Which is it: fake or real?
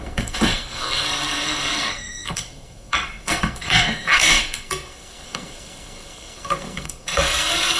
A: fake